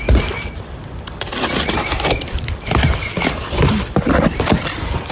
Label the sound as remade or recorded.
remade